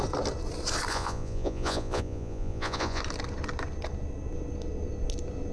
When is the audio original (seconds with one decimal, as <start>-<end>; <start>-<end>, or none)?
0.0-0.9; 3.0-5.5